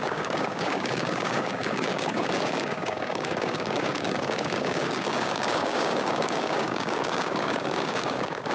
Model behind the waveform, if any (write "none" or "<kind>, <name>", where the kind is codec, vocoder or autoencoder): codec, DAC